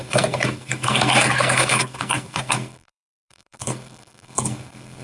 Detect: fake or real fake